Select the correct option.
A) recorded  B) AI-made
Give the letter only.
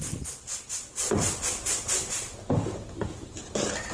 A